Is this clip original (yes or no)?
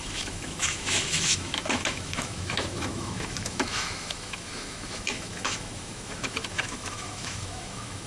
no